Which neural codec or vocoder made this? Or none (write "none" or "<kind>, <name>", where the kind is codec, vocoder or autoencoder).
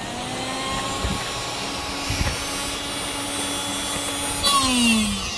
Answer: none